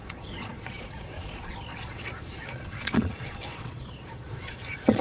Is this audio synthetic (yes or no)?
yes